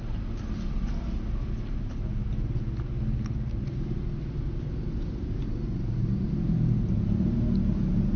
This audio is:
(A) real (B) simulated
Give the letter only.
A